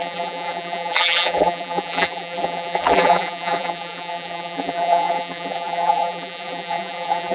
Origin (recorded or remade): remade